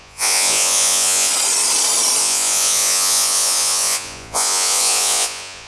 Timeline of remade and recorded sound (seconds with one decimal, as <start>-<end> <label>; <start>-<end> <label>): 0.0-1.3 remade; 1.3-2.2 recorded; 2.2-5.7 remade